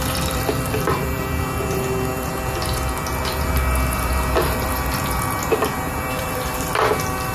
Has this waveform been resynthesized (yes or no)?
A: yes